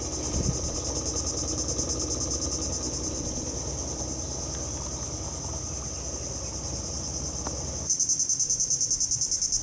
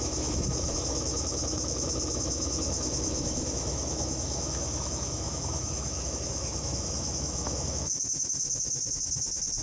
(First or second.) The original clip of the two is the first